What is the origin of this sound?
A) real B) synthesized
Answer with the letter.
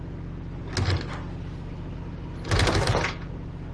A